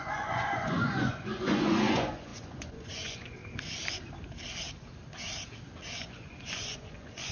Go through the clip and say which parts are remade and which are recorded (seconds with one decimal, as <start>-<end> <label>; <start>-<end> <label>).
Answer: 0.0-3.4 remade; 3.4-6.0 recorded; 6.0-7.3 remade